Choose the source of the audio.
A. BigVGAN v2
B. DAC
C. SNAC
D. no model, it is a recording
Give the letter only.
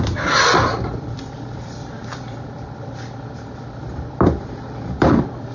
A